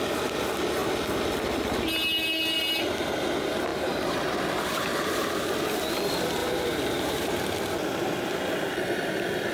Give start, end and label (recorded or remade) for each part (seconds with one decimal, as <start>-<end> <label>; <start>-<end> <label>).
0.0-6.4 recorded; 6.4-7.3 remade; 7.3-9.5 recorded